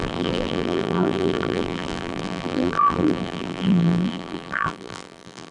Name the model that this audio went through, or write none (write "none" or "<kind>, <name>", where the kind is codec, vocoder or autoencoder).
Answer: vocoder, BigVGAN v2